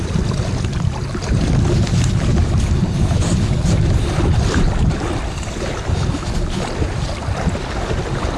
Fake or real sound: real